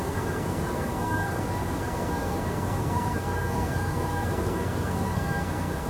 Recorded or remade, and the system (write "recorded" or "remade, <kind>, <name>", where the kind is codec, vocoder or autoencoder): remade, codec, SNAC